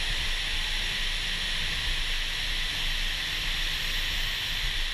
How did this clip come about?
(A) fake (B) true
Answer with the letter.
B